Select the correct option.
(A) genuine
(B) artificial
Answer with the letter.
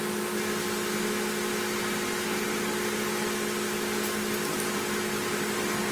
A